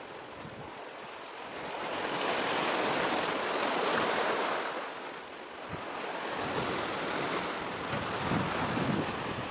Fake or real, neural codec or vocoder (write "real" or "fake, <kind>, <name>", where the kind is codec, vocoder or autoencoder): real